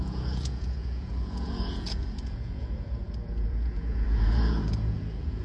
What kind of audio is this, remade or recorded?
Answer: remade